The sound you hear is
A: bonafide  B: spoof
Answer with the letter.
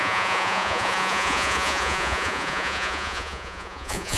B